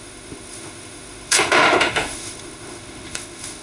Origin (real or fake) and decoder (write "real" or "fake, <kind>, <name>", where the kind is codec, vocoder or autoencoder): fake, autoencoder, DAC-VAE